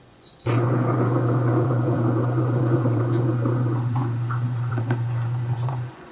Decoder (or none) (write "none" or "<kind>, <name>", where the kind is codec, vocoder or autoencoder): vocoder, Vocos